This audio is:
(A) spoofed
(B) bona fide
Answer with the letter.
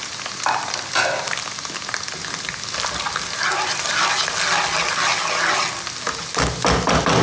B